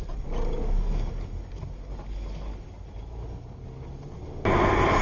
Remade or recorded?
recorded